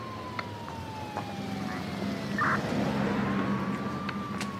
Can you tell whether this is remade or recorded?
recorded